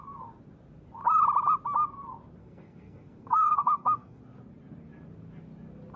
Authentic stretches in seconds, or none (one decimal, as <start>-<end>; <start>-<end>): 0.0-2.4; 4.2-6.0